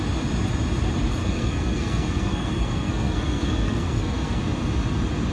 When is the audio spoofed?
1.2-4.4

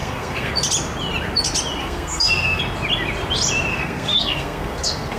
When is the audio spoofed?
0.0-0.5; 1.8-2.6; 3.7-5.2

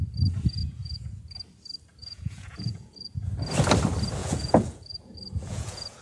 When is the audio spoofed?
0.6-1.2; 2.0-3.2; 4.2-6.0

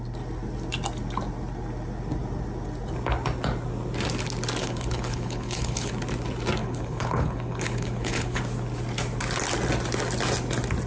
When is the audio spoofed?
4.6-5.9; 6.6-8.4

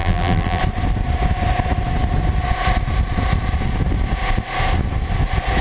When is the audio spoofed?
0.0-0.6

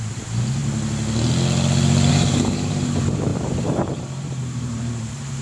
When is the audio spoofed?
0.0-0.6; 2.1-5.4

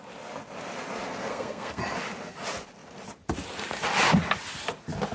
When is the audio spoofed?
1.1-1.8

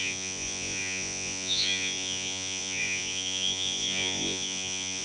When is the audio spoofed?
0.0-5.0